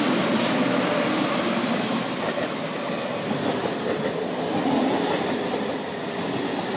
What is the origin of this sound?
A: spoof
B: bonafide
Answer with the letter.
B